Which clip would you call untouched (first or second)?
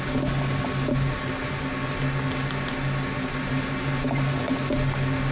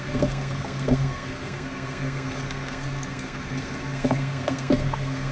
first